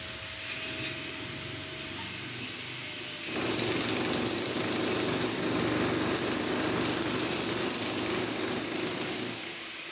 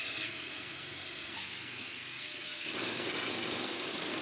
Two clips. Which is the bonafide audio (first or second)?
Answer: first